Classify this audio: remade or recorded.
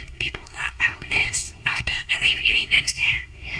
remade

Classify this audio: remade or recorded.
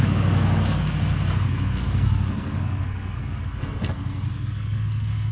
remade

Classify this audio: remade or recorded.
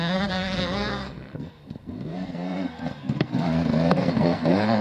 remade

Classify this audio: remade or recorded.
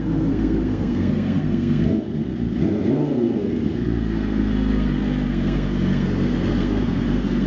remade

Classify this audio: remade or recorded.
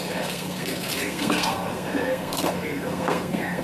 remade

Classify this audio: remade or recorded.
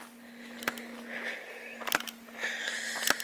recorded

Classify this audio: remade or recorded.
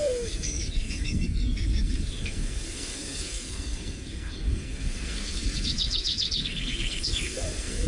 remade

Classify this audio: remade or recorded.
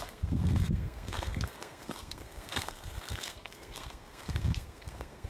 remade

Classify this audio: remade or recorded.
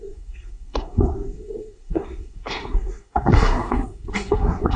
remade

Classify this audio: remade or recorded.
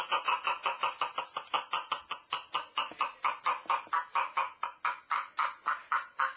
recorded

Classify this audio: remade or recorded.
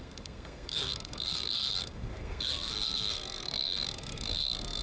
remade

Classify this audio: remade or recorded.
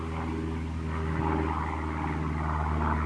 recorded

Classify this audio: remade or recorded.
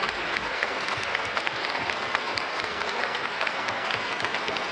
remade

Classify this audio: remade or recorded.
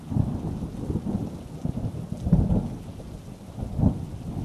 recorded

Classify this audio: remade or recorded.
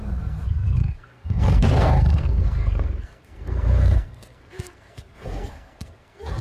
remade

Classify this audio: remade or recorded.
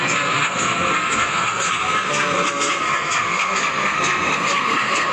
remade